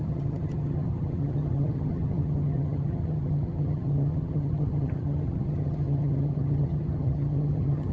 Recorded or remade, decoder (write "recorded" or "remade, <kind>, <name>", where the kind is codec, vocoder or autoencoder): remade, vocoder, HiFi-GAN